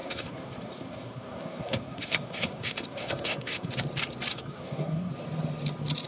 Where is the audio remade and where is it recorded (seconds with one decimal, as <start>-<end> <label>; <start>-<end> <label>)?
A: 0.0-3.7 remade; 3.7-4.3 recorded; 4.3-5.1 remade; 5.1-6.1 recorded